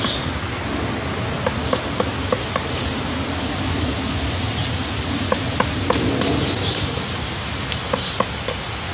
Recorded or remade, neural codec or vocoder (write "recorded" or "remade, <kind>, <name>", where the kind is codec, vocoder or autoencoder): recorded